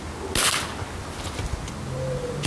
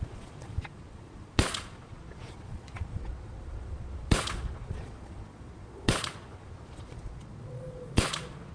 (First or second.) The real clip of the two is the first